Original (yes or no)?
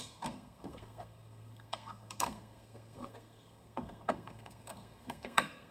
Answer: no